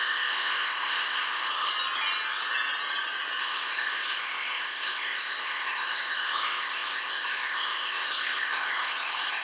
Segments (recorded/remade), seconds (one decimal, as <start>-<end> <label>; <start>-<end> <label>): 0.0-1.7 remade; 1.7-3.4 recorded; 3.4-9.4 remade